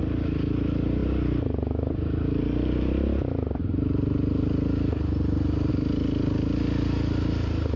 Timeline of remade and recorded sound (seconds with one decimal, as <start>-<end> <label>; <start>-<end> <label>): 0.0-1.0 recorded; 1.0-5.7 remade; 5.7-7.8 recorded